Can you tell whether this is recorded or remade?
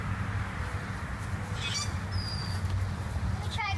recorded